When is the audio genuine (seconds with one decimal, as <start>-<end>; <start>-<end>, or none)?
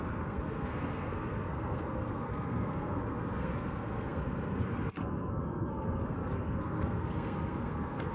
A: none